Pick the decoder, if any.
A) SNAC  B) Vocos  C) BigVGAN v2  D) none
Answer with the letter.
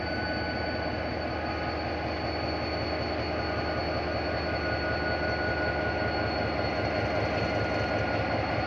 D